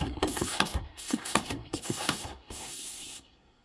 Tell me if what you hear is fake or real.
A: fake